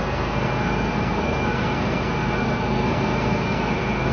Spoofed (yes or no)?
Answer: yes